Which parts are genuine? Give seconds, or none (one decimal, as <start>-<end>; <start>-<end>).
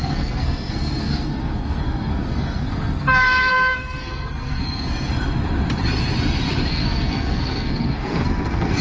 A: 5.1-6.7